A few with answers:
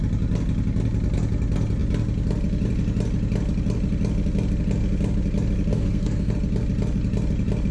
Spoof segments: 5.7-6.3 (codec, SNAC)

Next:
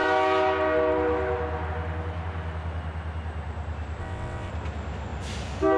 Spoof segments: 4.0-4.5 (vocoder, WaveNeXt)

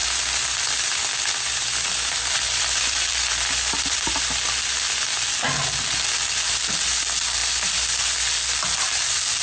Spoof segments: 0.0-4.2 (vocoder, BigVGAN v2)

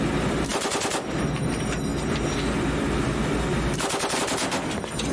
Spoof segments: none

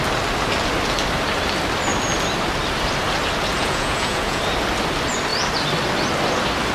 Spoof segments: 3.6-4.4 (vocoder, Vocos)